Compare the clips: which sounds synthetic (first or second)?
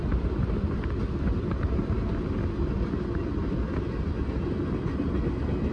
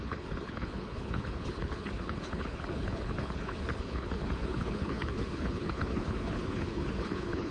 second